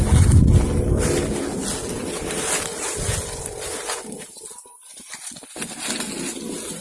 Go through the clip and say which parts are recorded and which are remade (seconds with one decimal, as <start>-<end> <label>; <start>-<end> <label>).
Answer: 0.0-2.0 recorded; 2.0-2.8 remade; 2.8-6.8 recorded